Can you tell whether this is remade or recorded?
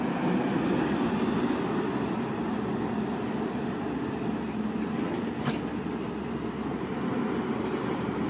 recorded